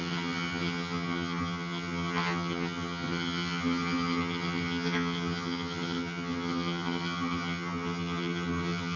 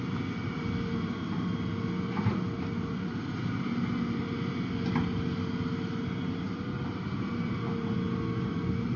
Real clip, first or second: second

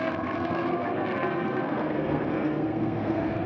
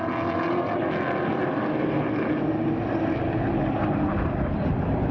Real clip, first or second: second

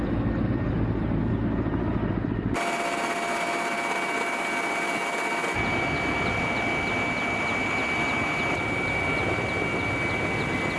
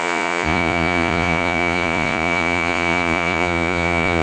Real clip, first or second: first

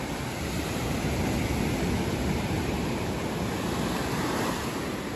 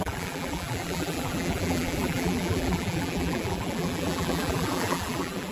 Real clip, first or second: first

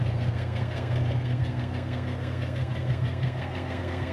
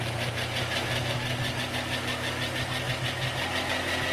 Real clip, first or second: second